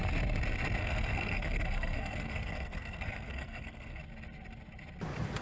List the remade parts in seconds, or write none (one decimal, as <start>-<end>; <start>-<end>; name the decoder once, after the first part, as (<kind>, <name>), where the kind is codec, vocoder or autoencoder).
0.8-4.0 (codec, SNAC)